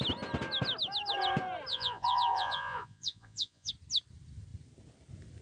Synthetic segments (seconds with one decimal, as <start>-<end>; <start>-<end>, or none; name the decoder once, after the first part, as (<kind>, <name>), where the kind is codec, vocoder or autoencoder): 1.7-3.7 (vocoder, Vocos)